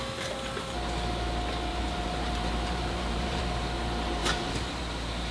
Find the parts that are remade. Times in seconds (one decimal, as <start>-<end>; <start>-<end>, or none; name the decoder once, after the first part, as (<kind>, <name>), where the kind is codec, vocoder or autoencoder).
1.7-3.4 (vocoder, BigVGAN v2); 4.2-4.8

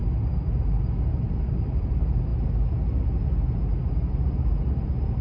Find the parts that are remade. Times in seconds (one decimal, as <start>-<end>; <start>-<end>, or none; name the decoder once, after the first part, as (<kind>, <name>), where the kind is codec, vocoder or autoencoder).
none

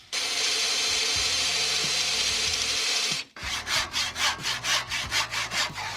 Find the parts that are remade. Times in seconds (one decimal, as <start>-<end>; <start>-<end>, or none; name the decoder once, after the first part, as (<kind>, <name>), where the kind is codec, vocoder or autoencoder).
0.0-1.8 (vocoder, BigVGAN v2); 2.5-4.7; 5.2-6.0

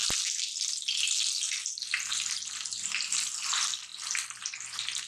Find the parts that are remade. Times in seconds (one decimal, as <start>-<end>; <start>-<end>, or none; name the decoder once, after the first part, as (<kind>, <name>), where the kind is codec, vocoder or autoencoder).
3.9-4.5 (vocoder, BigVGAN v2)